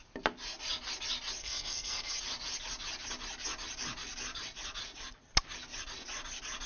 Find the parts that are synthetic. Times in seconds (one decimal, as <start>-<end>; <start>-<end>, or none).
1.4-2.2